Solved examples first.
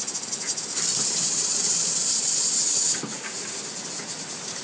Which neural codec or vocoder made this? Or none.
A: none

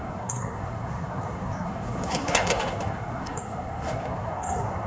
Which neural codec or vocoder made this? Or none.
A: codec, SNAC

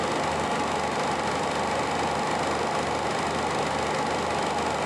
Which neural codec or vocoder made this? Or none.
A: none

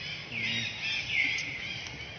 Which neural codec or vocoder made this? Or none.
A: none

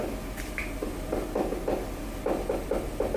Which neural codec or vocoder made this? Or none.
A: none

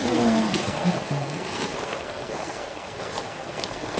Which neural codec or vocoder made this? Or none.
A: codec, SNAC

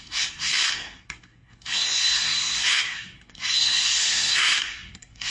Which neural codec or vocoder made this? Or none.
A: codec, SNAC